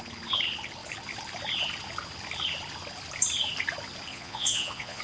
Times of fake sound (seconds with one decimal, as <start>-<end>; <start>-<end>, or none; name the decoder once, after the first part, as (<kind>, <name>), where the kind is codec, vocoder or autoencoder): 4.1-5.0 (vocoder, Vocos)